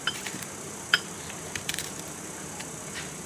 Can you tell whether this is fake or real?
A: fake